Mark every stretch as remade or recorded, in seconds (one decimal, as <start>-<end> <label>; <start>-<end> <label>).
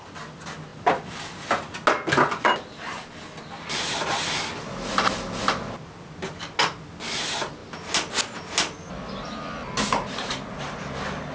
0.0-11.3 recorded